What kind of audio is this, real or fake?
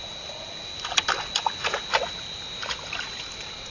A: real